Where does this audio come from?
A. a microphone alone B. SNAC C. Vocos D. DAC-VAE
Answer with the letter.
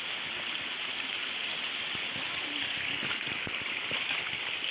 A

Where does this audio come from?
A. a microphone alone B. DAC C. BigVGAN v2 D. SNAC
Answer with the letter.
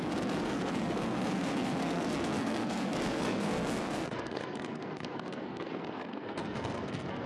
D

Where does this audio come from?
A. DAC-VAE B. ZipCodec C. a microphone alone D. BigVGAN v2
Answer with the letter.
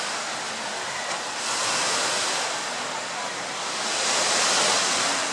C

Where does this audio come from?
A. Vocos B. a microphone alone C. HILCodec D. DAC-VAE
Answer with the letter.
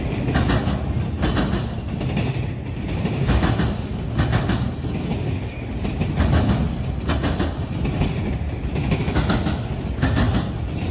B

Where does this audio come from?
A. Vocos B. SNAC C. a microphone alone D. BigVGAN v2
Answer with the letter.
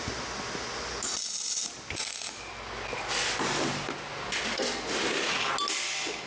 C